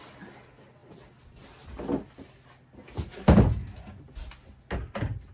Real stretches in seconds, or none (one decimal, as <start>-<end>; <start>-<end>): 0.0-5.3

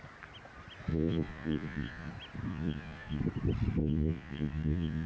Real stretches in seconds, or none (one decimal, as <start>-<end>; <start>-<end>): 0.0-0.9; 2.1-2.5; 3.2-3.8

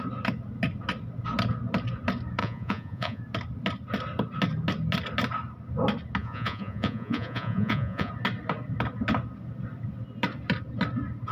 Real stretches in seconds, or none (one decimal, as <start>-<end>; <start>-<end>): 0.0-2.4; 3.2-6.2; 8.1-11.3

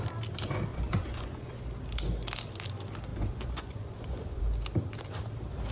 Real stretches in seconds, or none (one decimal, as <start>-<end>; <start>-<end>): 0.0-0.7; 1.6-3.1; 4.4-5.7

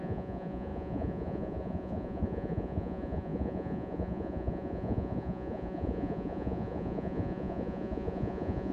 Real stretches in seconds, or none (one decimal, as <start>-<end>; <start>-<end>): none